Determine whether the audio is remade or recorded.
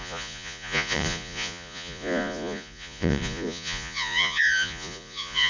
remade